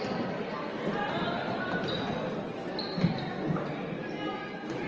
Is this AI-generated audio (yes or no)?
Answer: no